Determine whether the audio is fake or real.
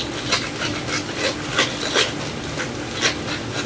real